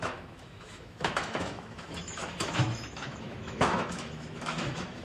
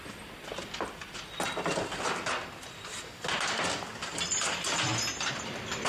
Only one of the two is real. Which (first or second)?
second